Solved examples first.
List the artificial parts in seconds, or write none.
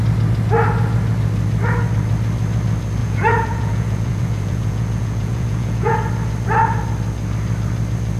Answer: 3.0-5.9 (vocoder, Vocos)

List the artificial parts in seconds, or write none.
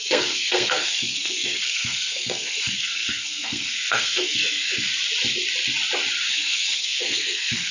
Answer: 0.0-4.9 (codec, SNAC); 6.3-7.7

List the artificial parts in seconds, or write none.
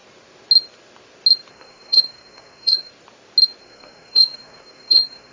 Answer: 1.5-2.9 (codec, SNAC); 3.6-5.3